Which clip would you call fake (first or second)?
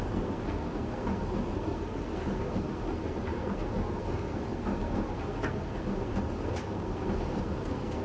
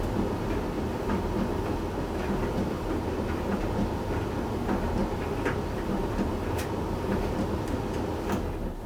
first